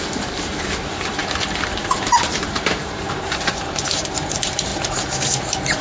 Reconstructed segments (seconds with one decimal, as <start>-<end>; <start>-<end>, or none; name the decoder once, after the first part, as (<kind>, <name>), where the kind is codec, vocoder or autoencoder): 0.0-4.7 (vocoder, BigVGAN v2)